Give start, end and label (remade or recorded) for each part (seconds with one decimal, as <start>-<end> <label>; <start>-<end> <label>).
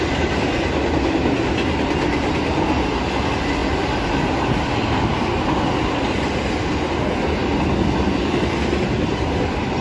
0.0-9.8 recorded